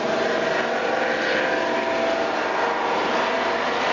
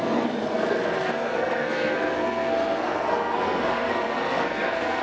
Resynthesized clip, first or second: second